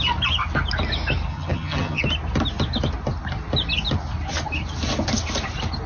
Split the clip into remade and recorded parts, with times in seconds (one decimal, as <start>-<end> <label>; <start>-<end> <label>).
0.0-1.3 recorded; 1.3-2.0 remade; 2.0-5.9 recorded